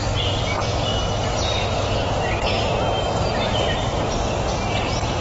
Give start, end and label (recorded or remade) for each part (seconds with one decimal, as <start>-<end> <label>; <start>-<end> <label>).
0.0-5.2 recorded